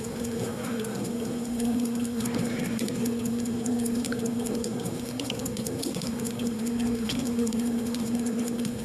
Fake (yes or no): yes